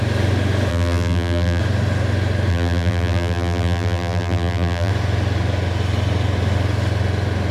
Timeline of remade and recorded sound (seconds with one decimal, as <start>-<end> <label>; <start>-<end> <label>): 0.0-0.7 recorded; 0.7-1.6 remade; 1.6-2.5 recorded; 2.5-4.9 remade; 4.9-7.5 recorded